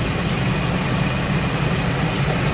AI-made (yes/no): no